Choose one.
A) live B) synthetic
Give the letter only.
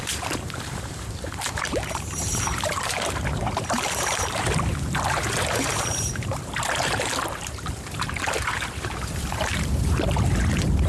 B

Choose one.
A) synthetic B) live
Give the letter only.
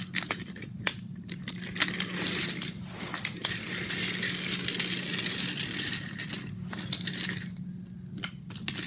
B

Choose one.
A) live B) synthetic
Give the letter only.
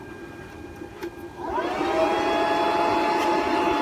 A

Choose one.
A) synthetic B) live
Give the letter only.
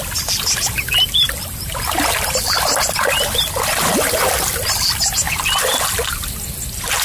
B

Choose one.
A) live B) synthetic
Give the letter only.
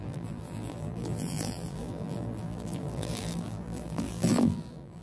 B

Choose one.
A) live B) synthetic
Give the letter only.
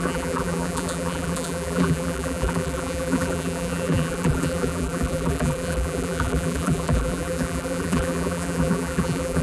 B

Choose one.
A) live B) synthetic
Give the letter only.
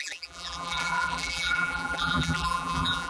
B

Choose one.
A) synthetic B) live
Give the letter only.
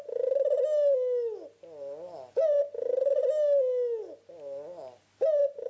B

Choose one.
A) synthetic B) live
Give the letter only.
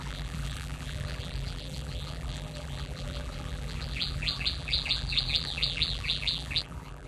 A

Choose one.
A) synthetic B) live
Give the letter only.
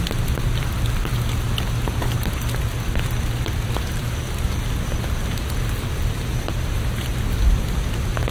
B